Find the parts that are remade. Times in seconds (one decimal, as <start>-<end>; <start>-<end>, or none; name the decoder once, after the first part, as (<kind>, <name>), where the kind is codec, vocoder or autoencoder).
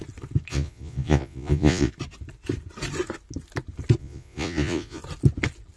0.5-1.9 (vocoder, Vocos); 4.0-5.0